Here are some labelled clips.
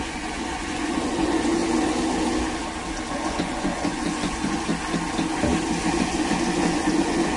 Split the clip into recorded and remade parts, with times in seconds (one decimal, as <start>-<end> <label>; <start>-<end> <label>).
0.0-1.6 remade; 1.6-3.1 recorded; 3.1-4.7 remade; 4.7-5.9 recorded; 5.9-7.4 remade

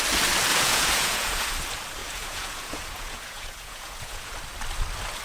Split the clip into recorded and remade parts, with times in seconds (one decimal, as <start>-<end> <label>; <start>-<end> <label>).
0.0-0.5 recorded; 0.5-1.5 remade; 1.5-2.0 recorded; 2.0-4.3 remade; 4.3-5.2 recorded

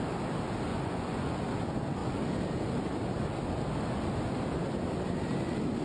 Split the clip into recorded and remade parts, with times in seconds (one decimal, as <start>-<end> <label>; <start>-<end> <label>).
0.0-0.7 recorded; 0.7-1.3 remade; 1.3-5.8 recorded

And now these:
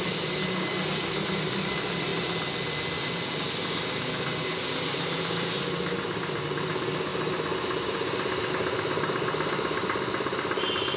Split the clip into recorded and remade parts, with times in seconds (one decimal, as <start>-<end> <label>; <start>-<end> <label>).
0.0-11.0 recorded

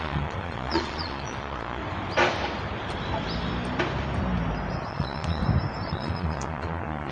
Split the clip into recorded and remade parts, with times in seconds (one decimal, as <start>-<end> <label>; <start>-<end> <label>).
0.0-1.8 remade; 1.8-4.9 recorded; 4.9-5.4 remade; 5.4-5.9 recorded; 5.9-7.1 remade

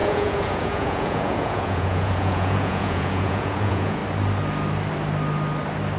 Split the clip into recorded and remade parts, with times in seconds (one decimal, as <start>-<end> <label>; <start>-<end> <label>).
0.0-4.0 remade; 4.0-6.0 recorded

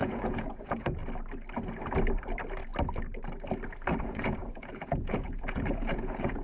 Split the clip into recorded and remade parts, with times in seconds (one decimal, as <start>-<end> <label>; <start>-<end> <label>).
0.0-1.0 remade; 1.0-4.0 recorded; 4.0-6.4 remade